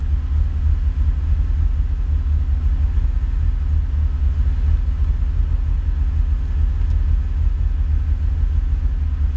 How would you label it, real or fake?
real